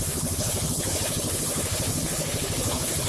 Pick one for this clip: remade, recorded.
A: remade